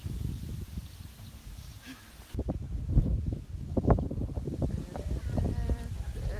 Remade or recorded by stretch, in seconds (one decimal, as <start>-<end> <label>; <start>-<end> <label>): 0.0-1.4 recorded; 1.4-2.1 remade; 2.1-3.0 recorded; 3.0-4.1 remade; 4.1-6.4 recorded